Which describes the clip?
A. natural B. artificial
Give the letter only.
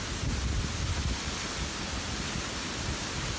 A